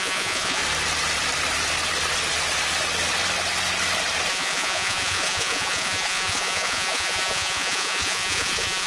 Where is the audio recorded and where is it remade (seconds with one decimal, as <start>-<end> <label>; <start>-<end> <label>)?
0.0-0.6 remade; 0.6-4.3 recorded; 4.3-8.9 remade